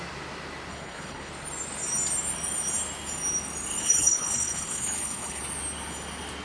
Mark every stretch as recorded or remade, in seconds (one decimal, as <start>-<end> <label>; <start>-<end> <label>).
0.0-0.7 recorded; 0.7-1.3 remade; 1.3-3.8 recorded; 3.8-5.4 remade; 5.4-6.4 recorded